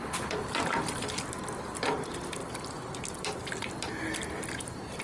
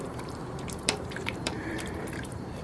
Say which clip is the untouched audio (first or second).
first